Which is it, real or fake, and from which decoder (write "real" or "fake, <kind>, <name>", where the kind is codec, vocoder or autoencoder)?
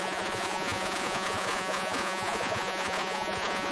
fake, vocoder, Vocos